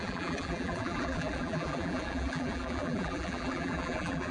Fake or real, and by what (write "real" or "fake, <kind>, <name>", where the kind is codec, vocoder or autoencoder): fake, vocoder, BigVGAN v2